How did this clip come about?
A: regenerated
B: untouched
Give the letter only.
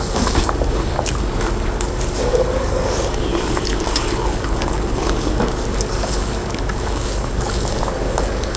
A